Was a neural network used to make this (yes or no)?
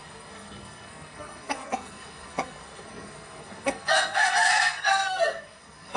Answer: yes